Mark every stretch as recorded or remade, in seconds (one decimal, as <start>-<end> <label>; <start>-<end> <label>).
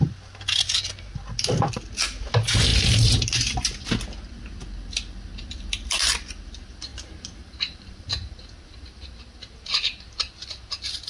0.0-2.7 recorded; 2.7-3.9 remade; 3.9-6.9 recorded; 6.9-8.3 remade; 8.3-11.1 recorded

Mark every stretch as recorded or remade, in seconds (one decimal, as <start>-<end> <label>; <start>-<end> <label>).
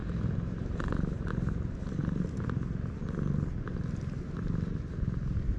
0.0-2.0 remade; 2.0-5.6 recorded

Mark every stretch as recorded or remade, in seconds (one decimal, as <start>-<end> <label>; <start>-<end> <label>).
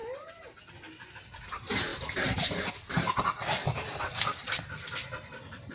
0.0-1.9 remade; 1.9-2.7 recorded; 2.7-5.7 remade